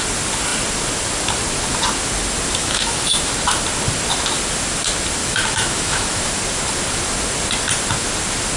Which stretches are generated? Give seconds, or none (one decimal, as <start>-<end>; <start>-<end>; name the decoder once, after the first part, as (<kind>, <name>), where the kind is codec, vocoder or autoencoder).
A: 2.6-3.3 (autoencoder, DAC-VAE); 5.2-6.3